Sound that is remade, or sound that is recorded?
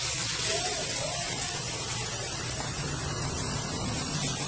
remade